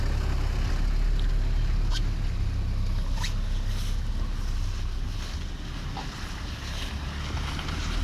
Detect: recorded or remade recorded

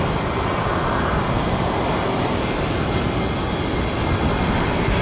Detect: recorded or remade recorded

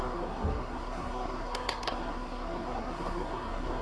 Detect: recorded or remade remade